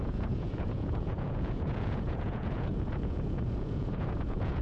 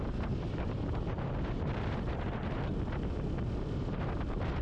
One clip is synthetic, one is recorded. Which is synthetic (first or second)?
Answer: first